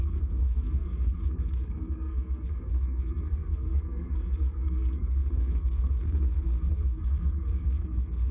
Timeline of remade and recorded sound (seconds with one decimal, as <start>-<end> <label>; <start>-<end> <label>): 0.0-8.3 remade